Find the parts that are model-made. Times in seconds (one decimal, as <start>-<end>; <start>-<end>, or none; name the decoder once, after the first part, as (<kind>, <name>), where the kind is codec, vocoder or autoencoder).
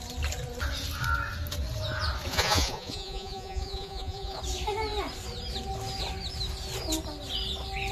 2.3-4.4 (vocoder, Vocos)